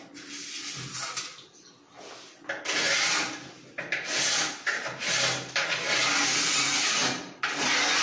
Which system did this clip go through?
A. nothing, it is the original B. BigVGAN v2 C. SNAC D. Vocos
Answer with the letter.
A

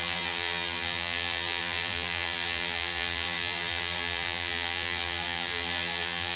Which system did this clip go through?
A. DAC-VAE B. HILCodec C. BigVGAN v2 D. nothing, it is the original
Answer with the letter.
C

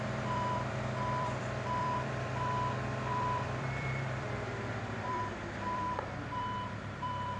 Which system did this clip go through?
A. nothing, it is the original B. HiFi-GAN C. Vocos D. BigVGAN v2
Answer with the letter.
D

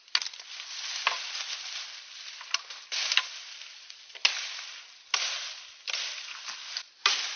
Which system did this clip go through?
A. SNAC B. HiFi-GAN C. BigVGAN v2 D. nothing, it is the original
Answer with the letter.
D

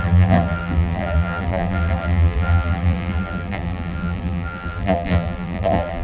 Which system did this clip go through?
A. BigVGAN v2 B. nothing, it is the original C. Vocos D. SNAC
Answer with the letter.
A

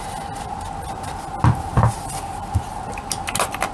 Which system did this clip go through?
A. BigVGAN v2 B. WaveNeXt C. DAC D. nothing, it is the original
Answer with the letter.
D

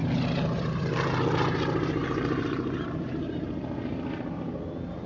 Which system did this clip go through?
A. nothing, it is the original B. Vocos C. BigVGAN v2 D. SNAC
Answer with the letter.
C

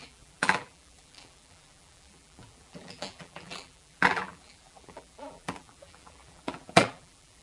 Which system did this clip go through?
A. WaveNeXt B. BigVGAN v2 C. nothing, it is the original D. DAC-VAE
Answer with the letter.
B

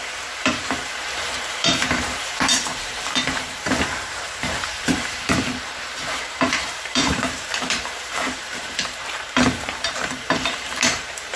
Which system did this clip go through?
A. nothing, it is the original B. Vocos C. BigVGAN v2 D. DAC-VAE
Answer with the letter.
C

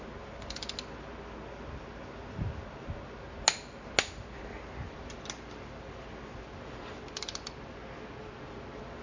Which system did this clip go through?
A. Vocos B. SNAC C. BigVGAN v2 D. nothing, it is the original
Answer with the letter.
D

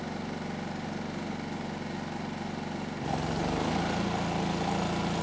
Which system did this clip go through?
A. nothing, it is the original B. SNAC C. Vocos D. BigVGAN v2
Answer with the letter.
A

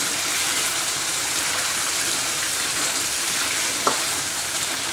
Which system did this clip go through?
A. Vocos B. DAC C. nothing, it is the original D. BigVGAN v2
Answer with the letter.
D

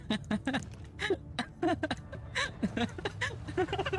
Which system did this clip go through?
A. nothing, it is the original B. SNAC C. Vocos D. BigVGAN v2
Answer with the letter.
D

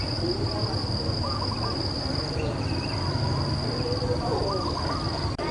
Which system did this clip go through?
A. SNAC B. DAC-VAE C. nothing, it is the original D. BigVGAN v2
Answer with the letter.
C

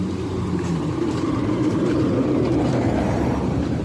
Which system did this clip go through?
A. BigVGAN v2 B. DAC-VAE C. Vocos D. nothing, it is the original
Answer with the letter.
A